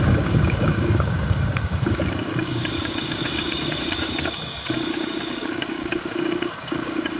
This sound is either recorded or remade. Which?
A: remade